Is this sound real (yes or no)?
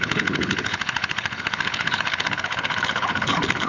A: no